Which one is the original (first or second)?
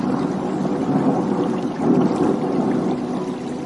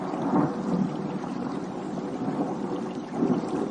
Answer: first